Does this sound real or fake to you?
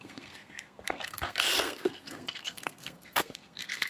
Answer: fake